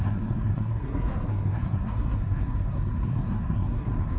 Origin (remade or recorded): remade